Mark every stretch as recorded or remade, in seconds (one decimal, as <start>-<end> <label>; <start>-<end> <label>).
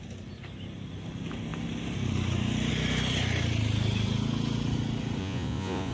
0.0-5.2 recorded; 5.2-5.9 remade